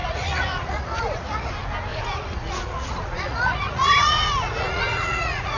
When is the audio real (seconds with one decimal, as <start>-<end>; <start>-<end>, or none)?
1.5-1.9